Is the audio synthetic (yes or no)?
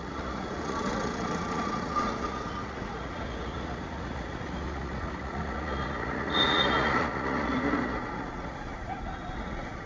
yes